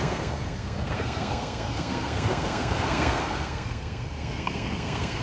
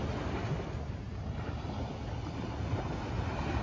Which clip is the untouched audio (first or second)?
second